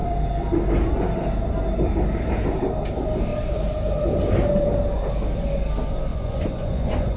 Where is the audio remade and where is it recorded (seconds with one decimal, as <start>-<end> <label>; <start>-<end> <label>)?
0.0-6.1 recorded; 6.1-7.2 remade